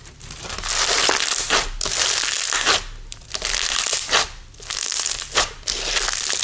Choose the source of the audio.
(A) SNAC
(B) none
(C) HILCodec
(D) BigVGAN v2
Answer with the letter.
B